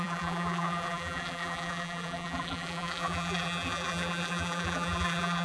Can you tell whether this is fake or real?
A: fake